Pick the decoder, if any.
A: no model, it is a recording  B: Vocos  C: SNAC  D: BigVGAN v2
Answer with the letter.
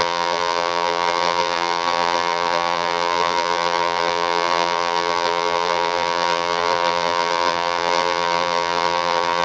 D